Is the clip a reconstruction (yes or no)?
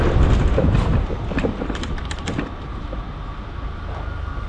no